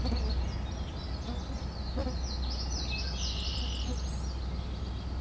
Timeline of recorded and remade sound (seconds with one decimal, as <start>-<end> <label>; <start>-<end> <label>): 0.0-5.2 recorded